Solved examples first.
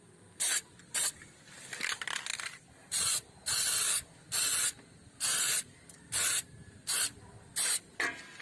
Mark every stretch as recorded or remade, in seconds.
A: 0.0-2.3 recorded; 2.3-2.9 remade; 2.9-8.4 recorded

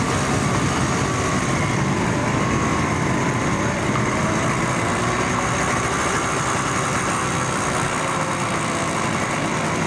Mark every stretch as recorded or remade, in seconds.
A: 0.0-9.9 recorded

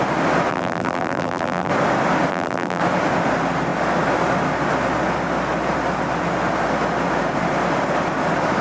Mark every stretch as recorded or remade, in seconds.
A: 0.0-0.5 recorded; 0.5-1.7 remade; 1.7-2.3 recorded; 2.3-2.8 remade; 2.8-8.6 recorded

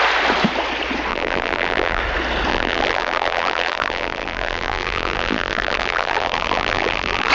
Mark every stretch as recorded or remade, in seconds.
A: 0.0-1.1 recorded; 1.1-2.0 remade; 2.0-2.5 recorded; 2.5-7.3 remade

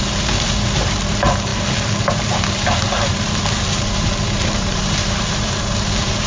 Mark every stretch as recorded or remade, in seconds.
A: 0.0-1.5 remade; 1.5-2.1 recorded; 2.1-6.3 remade